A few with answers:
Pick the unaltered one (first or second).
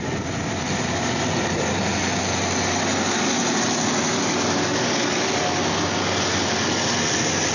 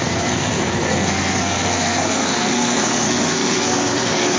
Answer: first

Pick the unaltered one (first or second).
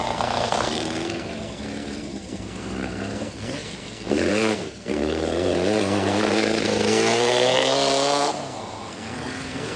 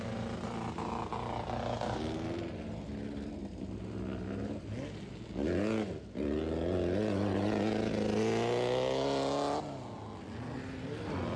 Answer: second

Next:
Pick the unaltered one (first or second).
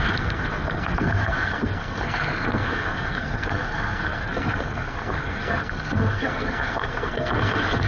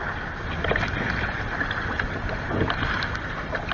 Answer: second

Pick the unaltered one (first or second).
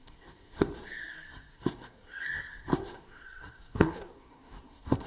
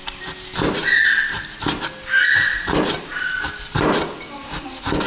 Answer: second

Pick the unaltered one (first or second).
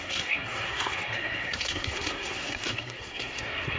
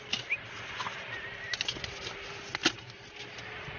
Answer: second